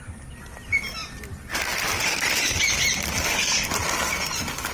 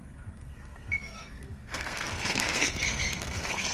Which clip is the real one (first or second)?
first